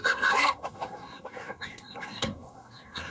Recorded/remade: remade